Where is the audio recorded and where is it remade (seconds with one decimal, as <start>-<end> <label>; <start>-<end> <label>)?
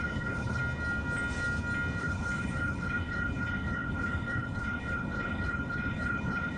0.0-0.6 remade; 0.6-2.0 recorded; 2.0-6.6 remade